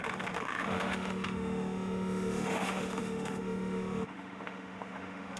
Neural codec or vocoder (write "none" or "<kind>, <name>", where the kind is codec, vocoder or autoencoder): autoencoder, DAC-VAE